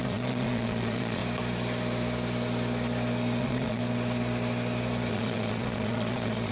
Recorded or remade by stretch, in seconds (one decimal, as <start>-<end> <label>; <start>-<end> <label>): 0.0-1.2 remade; 1.2-3.4 recorded; 3.4-3.8 remade; 3.8-5.1 recorded; 5.1-6.5 remade